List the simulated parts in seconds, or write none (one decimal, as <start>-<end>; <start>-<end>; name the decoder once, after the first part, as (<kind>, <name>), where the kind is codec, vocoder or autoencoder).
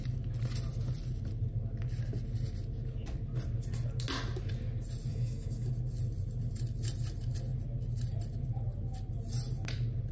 5.1-5.7 (codec, DAC)